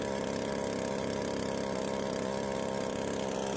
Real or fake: real